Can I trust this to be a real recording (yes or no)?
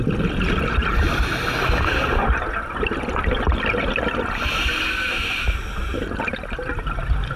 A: yes